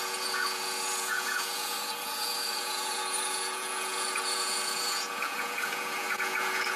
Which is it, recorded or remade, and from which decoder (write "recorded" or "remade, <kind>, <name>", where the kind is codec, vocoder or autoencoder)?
remade, vocoder, Vocos